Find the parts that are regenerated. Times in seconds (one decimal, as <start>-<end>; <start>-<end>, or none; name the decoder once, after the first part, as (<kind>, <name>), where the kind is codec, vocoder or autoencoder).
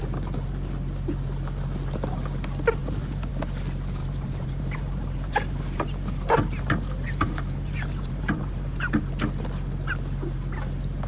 2.8-3.3 (vocoder, BigVGAN v2); 4.0-9.0